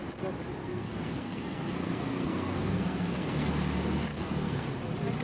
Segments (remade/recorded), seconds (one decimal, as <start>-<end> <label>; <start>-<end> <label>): 0.0-0.6 recorded; 0.6-3.5 remade; 3.5-4.1 recorded; 4.1-4.7 remade; 4.7-5.2 recorded